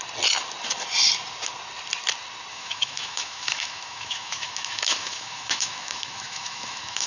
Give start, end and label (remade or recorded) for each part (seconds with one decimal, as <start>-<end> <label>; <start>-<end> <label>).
0.0-2.5 recorded; 2.5-7.1 remade